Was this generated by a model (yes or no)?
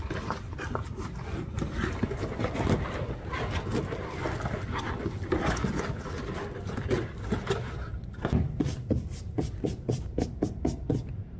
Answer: no